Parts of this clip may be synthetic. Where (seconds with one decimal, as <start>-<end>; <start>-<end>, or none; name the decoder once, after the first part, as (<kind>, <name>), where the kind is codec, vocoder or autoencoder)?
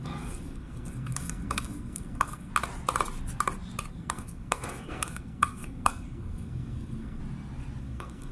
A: 0.0-2.5 (codec, SNAC); 3.9-7.2; 7.8-8.3